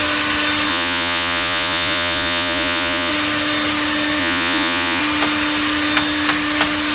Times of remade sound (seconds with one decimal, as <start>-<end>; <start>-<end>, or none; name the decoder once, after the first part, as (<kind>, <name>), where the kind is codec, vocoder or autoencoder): 0.7-3.1 (vocoder, Vocos); 4.2-5.0